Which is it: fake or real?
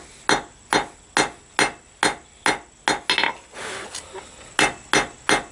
real